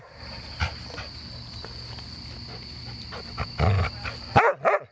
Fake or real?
real